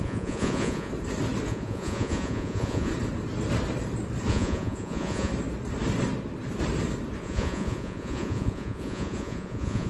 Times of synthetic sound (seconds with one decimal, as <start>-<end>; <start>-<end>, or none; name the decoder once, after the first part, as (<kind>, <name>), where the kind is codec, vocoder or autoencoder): 0.0-0.9 (vocoder, Vocos); 1.5-2.9; 4.3-5.3; 7.2-9.9